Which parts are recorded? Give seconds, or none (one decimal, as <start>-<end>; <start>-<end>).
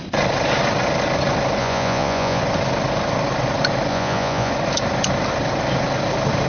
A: 0.0-1.6; 2.4-3.9; 4.5-6.5